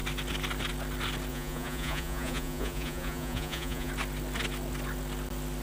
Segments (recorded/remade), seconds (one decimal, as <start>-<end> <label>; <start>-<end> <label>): 0.0-1.3 recorded; 1.3-3.9 remade; 3.9-5.6 recorded